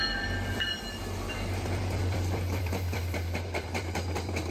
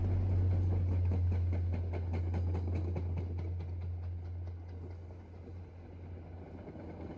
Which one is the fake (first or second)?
first